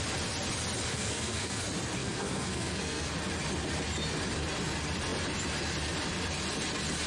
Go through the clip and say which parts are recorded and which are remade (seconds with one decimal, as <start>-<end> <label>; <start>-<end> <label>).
0.0-0.9 recorded; 0.9-1.6 remade; 1.6-2.0 recorded; 2.0-3.1 remade; 3.1-7.1 recorded